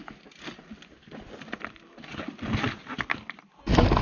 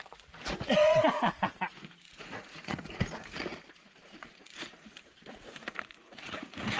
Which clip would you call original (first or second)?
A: first